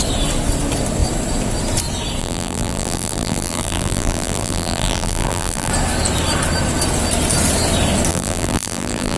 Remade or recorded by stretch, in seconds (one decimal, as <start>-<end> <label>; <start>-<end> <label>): 0.0-2.2 recorded; 2.2-5.7 remade; 5.7-8.1 recorded; 8.1-9.2 remade